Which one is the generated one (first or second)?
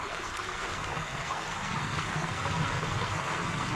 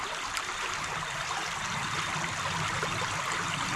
first